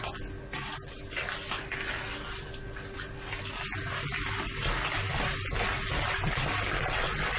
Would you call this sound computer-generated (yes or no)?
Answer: no